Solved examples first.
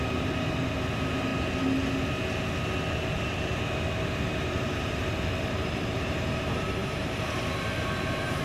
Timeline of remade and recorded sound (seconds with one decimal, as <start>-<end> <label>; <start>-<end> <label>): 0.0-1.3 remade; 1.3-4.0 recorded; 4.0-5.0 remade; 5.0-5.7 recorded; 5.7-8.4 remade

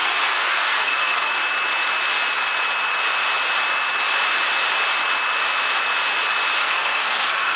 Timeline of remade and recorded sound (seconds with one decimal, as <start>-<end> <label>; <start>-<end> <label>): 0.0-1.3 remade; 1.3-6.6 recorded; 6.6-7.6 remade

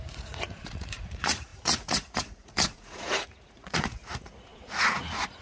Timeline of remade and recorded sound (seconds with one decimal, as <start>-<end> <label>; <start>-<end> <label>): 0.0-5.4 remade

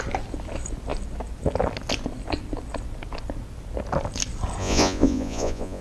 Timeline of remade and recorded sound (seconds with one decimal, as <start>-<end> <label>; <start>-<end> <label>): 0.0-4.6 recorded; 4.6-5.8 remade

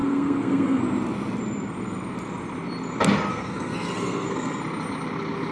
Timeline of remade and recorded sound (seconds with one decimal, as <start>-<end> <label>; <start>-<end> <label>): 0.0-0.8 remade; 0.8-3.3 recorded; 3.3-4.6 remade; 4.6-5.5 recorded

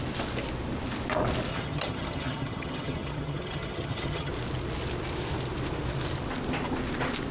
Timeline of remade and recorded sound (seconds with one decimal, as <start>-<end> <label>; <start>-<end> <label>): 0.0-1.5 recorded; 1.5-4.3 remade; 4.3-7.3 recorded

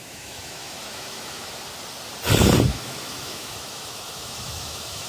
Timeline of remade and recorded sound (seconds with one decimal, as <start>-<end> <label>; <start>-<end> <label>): 0.0-1.5 remade; 1.5-2.7 recorded; 2.7-5.1 remade